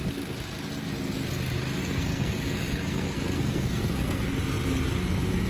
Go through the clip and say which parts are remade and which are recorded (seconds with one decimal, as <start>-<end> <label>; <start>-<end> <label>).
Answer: 0.0-1.8 recorded; 1.8-4.3 remade; 4.3-5.5 recorded